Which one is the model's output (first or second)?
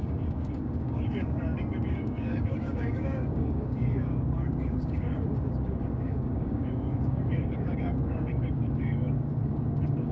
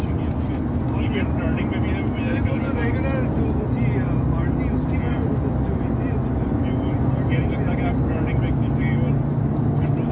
first